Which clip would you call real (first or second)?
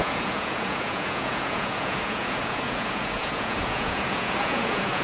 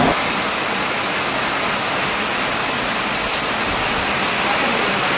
second